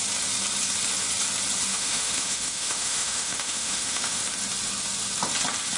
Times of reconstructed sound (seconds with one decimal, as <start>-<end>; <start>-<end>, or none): 1.7-4.2